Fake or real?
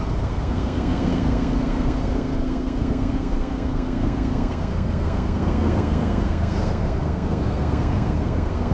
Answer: fake